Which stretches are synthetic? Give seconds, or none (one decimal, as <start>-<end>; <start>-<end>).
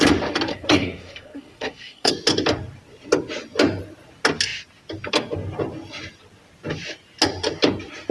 0.5-2.1